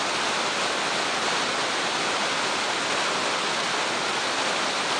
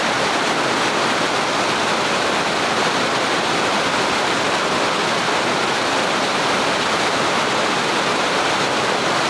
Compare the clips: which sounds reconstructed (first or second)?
second